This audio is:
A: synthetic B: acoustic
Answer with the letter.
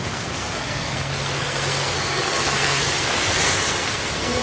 A